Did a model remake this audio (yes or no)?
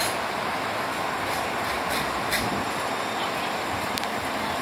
no